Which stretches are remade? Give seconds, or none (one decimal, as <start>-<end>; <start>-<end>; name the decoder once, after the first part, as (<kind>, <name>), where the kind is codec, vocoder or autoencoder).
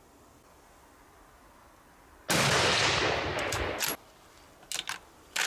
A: 3.3-4.1 (vocoder, BigVGAN v2)